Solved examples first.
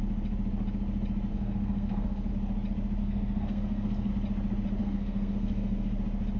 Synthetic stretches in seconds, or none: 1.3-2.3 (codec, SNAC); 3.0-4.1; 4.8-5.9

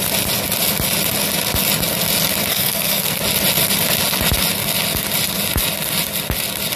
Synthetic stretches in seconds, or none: 2.5-3.2 (codec, SNAC)